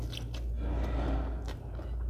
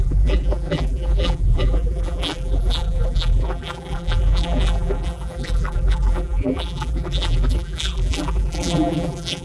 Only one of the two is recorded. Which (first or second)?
first